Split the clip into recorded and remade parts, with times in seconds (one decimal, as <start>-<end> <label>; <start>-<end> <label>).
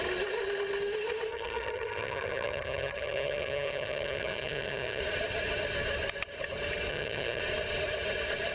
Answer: 0.0-1.3 recorded; 1.3-5.0 remade; 5.0-6.9 recorded; 6.9-7.4 remade; 7.4-8.5 recorded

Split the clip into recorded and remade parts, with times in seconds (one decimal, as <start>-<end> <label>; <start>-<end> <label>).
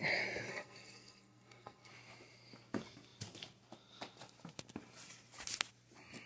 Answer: 0.0-0.5 recorded; 0.5-1.9 remade; 1.9-6.3 recorded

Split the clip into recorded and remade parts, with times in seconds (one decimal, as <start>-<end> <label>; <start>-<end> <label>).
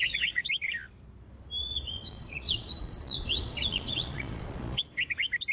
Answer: 0.0-0.5 remade; 0.5-1.6 recorded; 1.6-4.8 remade; 4.8-5.5 recorded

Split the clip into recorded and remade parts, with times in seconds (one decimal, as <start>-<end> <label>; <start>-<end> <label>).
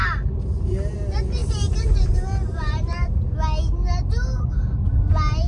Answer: 0.0-1.4 recorded; 1.4-3.1 remade; 3.1-5.5 recorded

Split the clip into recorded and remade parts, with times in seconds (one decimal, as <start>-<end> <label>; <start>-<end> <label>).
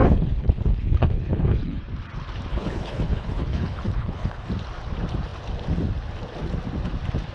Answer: 0.0-1.8 remade; 1.8-2.5 recorded; 2.5-4.5 remade; 4.5-7.3 recorded